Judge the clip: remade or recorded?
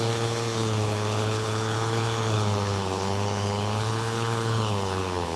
remade